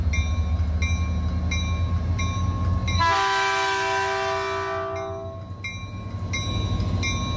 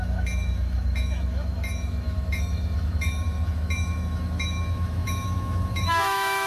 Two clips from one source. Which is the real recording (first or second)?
first